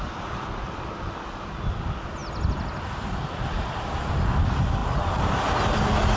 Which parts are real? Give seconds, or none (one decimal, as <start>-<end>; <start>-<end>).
0.0-6.2